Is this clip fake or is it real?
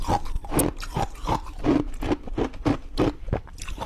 real